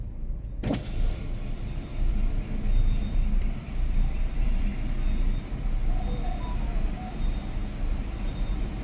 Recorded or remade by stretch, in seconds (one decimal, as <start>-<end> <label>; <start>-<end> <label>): 0.0-4.7 remade; 4.7-6.4 recorded; 6.4-7.6 remade; 7.6-8.2 recorded; 8.2-8.8 remade